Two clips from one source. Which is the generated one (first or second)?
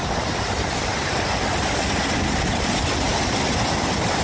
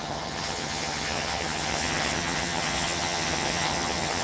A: second